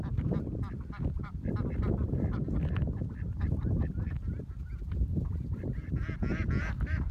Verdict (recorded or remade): remade